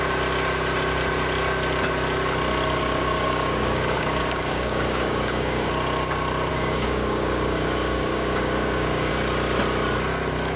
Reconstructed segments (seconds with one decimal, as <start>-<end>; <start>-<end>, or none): 2.8-5.7; 6.5-9.1